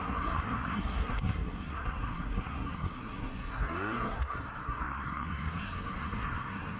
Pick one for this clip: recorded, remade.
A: remade